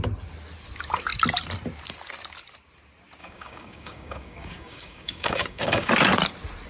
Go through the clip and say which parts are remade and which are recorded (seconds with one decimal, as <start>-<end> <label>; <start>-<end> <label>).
0.0-3.2 recorded; 3.2-5.9 remade; 5.9-6.7 recorded